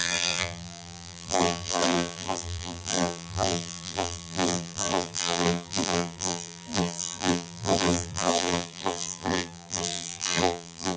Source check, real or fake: fake